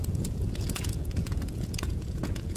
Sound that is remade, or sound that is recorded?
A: remade